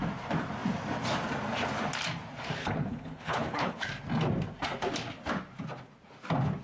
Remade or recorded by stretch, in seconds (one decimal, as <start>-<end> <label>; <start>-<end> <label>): 0.0-2.6 recorded; 2.6-3.8 remade; 3.8-6.6 recorded